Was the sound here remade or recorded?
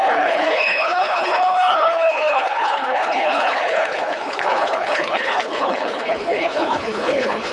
remade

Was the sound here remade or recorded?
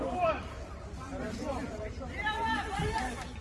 remade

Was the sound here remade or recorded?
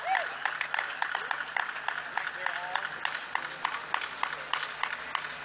recorded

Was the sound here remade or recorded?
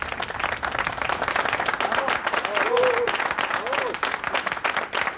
recorded